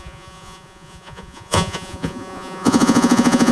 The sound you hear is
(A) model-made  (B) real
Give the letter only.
A